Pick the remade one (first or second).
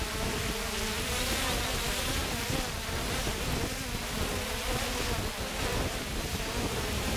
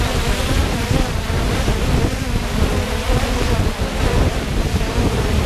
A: second